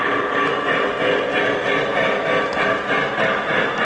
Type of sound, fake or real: real